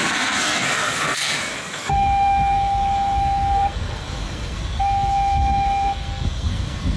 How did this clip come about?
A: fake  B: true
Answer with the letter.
A